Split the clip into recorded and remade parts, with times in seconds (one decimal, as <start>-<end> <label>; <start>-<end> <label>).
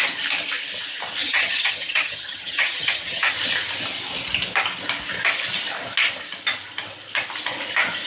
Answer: 0.0-1.2 recorded; 1.2-3.3 remade; 3.3-8.1 recorded